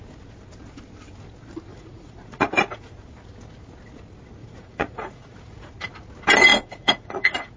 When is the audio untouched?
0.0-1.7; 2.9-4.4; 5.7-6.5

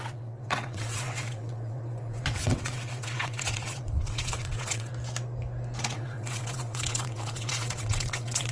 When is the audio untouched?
4.9-5.8

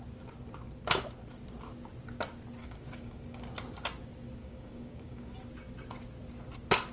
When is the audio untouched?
0.0-2.6; 3.4-4.4; 5.3-6.9

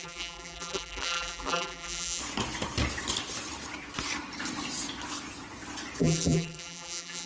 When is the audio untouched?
2.2-6.0

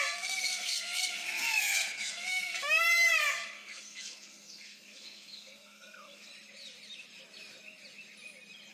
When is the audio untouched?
6.3-8.7

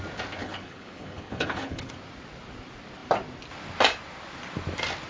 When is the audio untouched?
0.0-0.4; 1.9-5.1

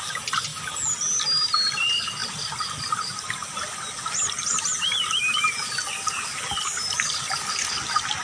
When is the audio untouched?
0.0-2.2; 2.9-8.2